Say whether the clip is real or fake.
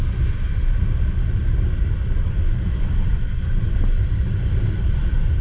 real